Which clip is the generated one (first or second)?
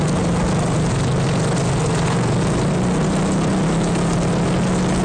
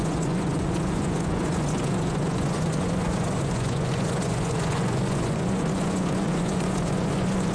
second